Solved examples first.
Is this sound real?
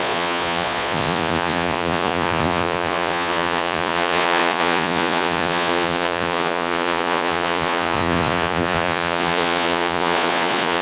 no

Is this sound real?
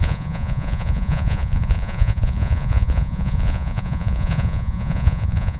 no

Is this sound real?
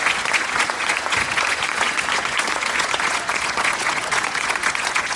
no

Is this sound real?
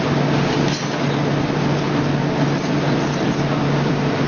yes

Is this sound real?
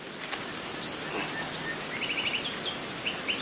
yes